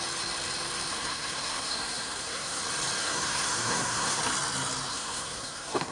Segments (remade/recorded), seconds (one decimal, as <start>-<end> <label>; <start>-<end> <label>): 0.0-0.9 recorded; 0.9-2.6 remade; 2.6-3.0 recorded; 3.0-4.2 remade; 4.2-4.9 recorded; 4.9-5.9 remade